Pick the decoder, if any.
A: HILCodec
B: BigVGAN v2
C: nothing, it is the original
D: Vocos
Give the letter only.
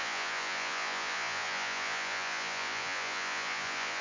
D